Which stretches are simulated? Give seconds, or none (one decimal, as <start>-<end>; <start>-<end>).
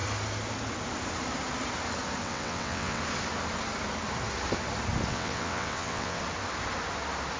2.2-3.0; 5.1-6.2